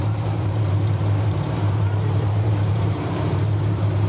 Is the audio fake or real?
fake